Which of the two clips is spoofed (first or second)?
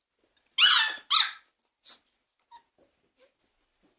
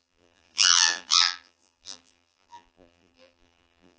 second